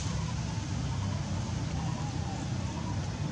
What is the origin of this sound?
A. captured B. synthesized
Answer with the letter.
A